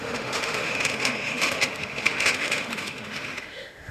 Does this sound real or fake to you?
fake